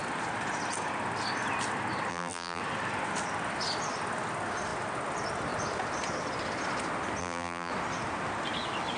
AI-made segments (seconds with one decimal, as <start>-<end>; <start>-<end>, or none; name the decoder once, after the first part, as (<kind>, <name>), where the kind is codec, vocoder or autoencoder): 2.1-2.6 (vocoder, BigVGAN v2); 7.2-7.7